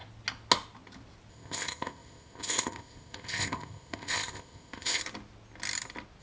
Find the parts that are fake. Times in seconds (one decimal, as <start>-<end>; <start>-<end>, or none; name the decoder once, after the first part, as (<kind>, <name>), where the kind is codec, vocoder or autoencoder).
1.3-5.0 (codec, ZipCodec)

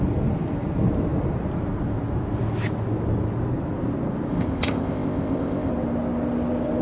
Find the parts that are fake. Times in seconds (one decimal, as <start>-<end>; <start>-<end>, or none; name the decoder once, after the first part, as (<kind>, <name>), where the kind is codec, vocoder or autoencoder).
4.3-5.7 (codec, ZipCodec)

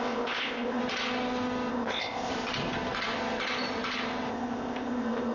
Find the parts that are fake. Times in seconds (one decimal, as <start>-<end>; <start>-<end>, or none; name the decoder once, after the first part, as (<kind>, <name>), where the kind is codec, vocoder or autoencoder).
0.0-0.8 (codec, ZipCodec); 1.7-2.3; 4.3-5.3

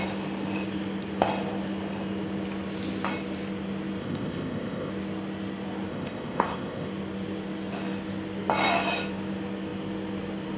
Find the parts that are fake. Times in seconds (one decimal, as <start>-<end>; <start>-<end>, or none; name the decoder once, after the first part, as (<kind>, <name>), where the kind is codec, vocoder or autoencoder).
4.0-4.9 (codec, ZipCodec); 5.9-6.9

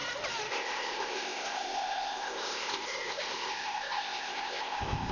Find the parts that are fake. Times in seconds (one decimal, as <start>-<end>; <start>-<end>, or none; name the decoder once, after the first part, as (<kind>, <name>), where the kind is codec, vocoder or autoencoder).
0.5-5.1 (codec, ZipCodec)